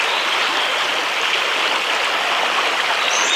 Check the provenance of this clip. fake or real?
real